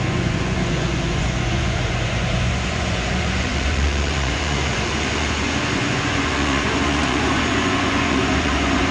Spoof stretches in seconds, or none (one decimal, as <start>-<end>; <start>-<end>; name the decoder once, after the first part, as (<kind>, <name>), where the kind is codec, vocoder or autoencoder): 0.0-8.9 (vocoder, Vocos)